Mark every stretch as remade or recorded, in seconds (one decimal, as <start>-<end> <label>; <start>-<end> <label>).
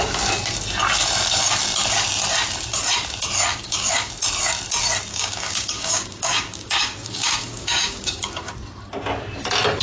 0.0-3.5 recorded; 3.5-4.1 remade; 4.1-5.1 recorded; 5.1-8.5 remade; 8.5-9.8 recorded